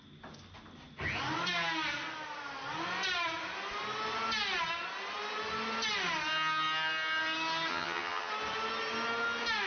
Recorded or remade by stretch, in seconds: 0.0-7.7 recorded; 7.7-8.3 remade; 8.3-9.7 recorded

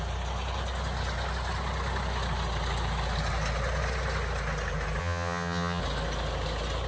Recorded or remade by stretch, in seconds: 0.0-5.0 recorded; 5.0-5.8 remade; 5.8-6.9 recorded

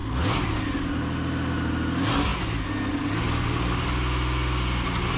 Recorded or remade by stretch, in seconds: 0.0-5.2 recorded

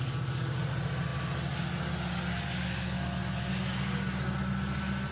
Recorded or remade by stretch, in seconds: 0.0-5.1 recorded

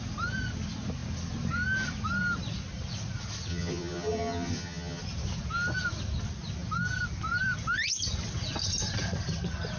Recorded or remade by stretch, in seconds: 0.0-3.5 recorded; 3.5-5.0 remade; 5.0-9.8 recorded

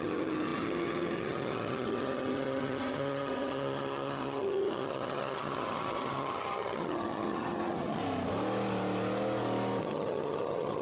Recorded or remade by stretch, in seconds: 0.0-8.0 remade; 8.0-9.8 recorded; 9.8-10.8 remade

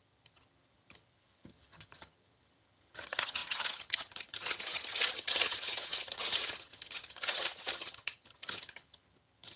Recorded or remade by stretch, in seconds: 0.0-9.6 remade